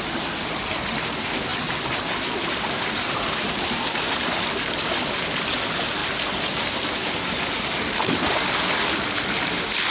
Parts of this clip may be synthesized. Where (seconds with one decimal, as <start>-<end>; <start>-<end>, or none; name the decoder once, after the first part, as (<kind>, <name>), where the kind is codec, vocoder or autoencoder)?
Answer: none

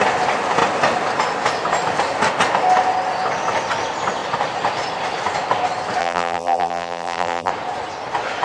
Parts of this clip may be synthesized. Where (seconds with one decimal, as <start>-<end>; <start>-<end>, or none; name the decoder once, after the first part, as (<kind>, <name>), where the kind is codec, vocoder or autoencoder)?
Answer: 6.0-7.5 (vocoder, BigVGAN v2)

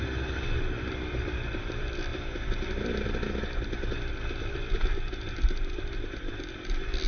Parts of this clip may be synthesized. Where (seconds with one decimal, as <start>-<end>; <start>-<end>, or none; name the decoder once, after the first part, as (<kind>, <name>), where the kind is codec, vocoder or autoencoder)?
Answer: none

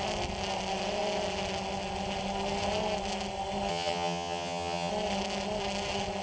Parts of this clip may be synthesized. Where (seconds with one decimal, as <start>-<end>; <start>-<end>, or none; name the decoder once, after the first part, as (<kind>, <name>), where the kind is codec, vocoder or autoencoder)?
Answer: 3.7-4.9 (vocoder, HiFi-GAN)